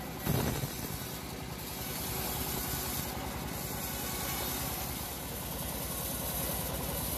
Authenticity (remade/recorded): recorded